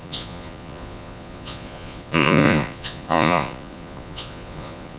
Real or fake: fake